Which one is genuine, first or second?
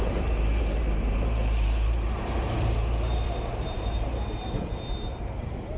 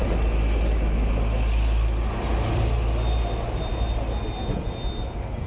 second